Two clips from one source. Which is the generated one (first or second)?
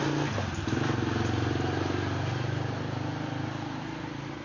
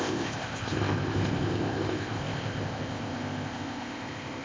second